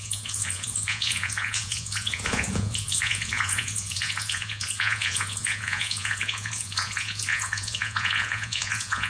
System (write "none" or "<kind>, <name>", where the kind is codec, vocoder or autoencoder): vocoder, Vocos